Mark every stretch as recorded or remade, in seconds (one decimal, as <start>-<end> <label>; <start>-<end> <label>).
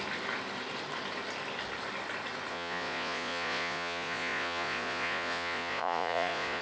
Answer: 0.0-2.5 recorded; 2.5-6.6 remade